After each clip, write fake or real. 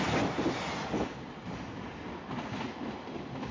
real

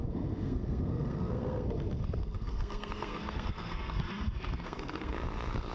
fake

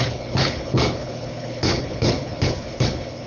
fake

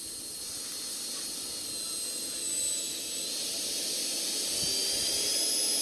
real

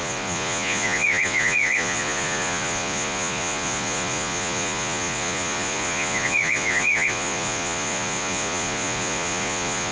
fake